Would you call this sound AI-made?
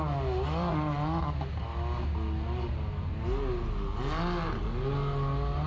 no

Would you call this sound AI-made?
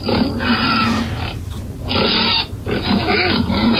no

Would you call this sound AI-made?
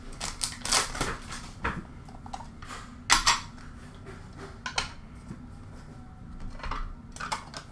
no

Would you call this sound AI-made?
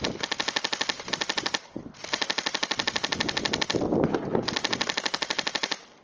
no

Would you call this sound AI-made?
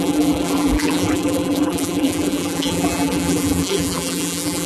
yes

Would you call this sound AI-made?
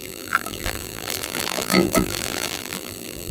yes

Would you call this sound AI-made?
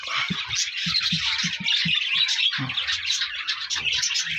no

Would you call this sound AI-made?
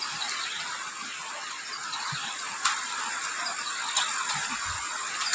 yes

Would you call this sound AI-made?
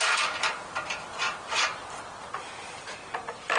yes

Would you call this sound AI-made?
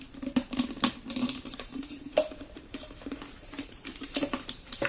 yes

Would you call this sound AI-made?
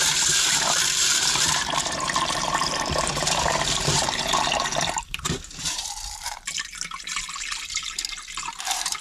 yes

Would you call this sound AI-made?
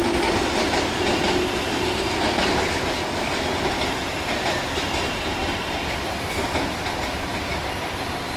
no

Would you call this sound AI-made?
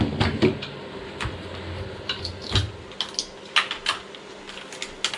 no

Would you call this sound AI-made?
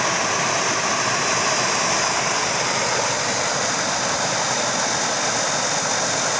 yes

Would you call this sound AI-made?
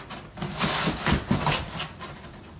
no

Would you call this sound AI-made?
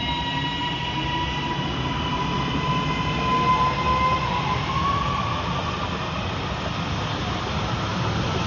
no